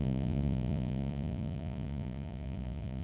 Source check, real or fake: fake